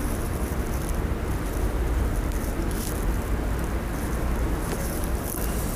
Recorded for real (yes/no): yes